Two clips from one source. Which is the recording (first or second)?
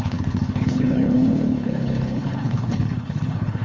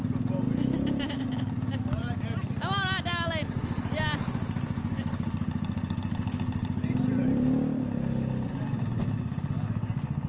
second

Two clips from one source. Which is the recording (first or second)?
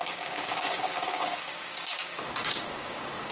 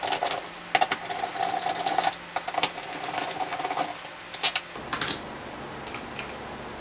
second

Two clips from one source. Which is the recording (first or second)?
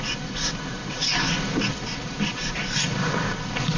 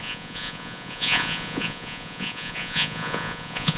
first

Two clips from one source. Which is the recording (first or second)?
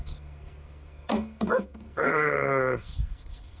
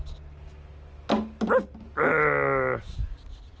second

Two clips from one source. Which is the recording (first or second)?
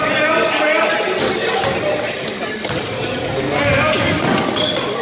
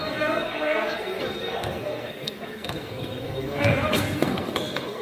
first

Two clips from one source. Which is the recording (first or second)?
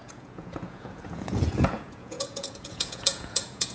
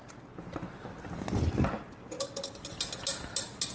second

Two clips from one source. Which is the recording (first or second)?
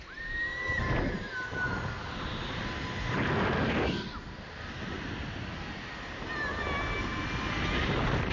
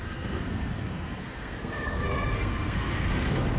first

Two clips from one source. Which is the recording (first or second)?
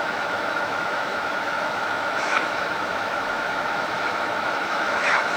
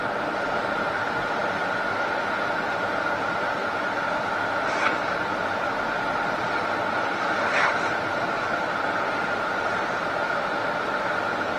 second